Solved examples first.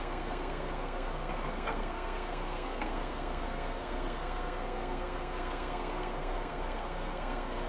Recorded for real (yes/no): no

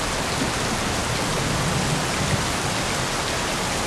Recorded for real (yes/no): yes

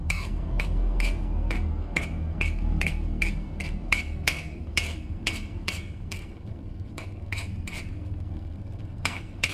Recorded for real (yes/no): no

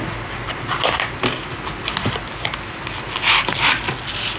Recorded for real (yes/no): yes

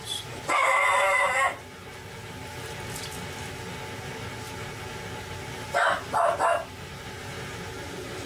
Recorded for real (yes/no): yes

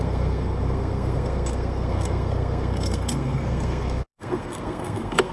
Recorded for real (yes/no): no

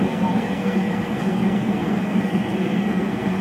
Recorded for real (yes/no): no